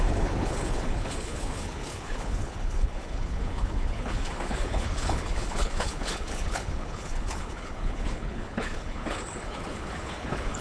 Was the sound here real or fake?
fake